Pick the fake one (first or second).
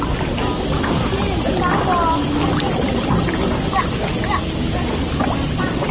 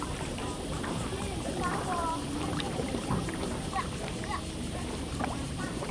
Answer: second